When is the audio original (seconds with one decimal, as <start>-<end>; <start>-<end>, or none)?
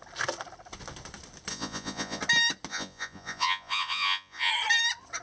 0.0-1.5; 2.2-2.7; 4.5-5.2